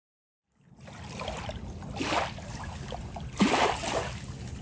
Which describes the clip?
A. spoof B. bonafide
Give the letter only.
B